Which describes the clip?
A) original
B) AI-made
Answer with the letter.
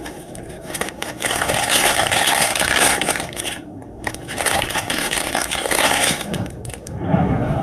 B